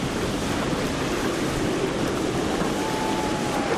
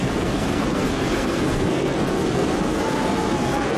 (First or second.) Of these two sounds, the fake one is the second